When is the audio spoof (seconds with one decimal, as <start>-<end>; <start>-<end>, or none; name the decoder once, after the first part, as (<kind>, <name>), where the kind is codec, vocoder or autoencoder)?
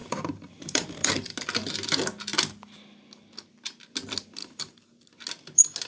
0.0-1.1 (vocoder, BigVGAN v2); 4.4-5.0